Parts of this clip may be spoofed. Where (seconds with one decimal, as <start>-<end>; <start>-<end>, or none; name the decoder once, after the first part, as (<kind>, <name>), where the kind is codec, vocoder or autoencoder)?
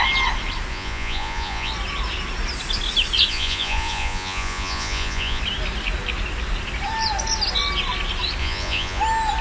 0.7-1.7 (vocoder, Vocos); 3.3-5.4; 8.4-9.0